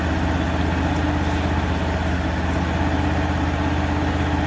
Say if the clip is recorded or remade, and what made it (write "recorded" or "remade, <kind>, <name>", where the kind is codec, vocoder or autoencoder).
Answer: recorded